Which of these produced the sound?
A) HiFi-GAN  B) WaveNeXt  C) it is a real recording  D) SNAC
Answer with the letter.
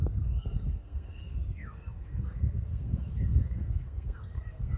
D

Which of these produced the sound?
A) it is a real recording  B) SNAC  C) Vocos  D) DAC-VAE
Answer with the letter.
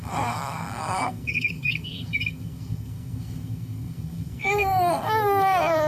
B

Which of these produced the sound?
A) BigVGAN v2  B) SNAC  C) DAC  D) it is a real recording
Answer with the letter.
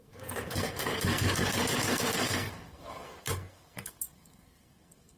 B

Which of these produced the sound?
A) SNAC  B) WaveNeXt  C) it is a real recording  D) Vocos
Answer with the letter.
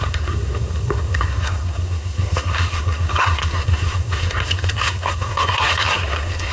A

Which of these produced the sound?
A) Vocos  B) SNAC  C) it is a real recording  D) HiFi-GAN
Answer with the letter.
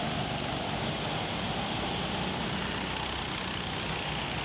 C